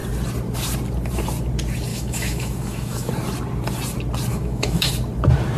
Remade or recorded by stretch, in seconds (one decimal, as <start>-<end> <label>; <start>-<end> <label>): 0.0-1.9 recorded; 1.9-3.1 remade; 3.1-4.3 recorded; 4.3-4.9 remade; 4.9-5.6 recorded